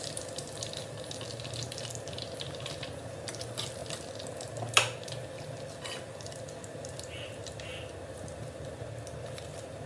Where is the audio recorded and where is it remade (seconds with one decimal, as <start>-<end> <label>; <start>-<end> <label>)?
0.0-9.9 recorded